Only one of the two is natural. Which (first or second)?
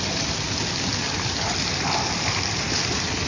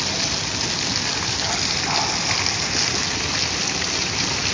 second